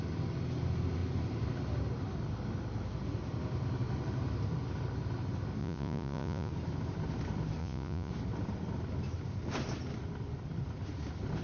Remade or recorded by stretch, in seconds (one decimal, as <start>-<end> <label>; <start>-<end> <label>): 0.0-5.6 recorded; 5.6-6.5 remade; 6.5-7.6 recorded; 7.6-8.1 remade; 8.1-11.4 recorded